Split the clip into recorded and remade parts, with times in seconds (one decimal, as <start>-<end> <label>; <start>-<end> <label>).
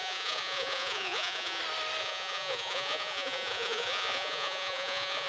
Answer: 0.0-1.6 remade; 1.6-2.0 recorded; 2.0-5.3 remade